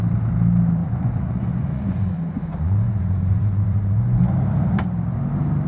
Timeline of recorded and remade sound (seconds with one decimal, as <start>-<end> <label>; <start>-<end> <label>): 0.0-0.8 recorded; 0.8-4.2 remade; 4.2-5.7 recorded